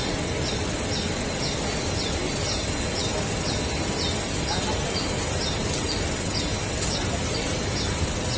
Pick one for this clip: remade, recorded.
recorded